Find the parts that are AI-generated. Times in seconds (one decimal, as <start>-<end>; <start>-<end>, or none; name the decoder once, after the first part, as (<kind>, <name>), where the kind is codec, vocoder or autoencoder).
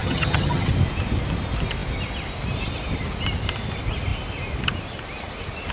0.0-0.7 (vocoder, HiFi-GAN)